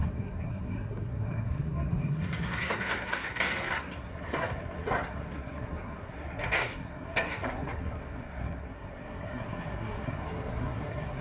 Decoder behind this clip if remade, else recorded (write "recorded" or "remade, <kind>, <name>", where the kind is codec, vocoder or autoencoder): remade, codec, SNAC